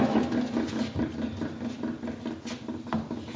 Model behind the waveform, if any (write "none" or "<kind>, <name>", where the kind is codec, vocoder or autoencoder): none